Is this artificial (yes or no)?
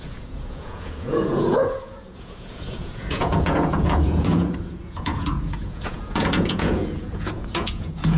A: yes